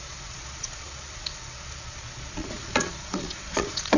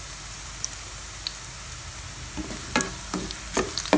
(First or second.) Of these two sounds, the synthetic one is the first